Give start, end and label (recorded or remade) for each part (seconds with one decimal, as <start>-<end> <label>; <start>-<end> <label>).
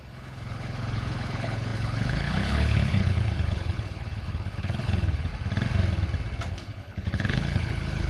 0.0-5.3 remade; 5.3-6.5 recorded; 6.5-8.1 remade